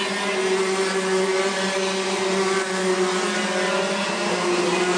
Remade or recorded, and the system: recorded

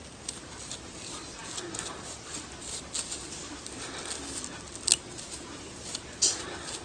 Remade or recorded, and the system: recorded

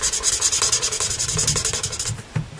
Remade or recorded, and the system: recorded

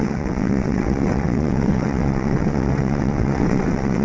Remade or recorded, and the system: remade, vocoder, WaveNeXt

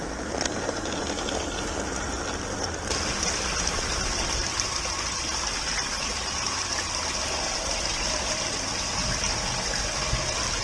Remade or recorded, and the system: recorded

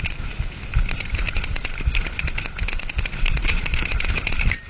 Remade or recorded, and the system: recorded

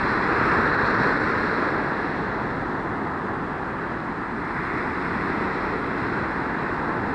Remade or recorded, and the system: recorded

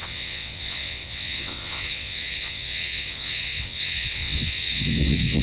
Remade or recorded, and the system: remade, vocoder, WaveNeXt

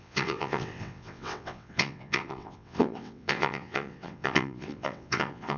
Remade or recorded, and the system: remade, vocoder, WaveNeXt